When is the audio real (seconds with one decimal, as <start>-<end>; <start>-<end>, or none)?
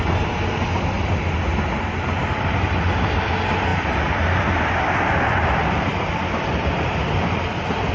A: 0.0-1.5; 3.3-3.7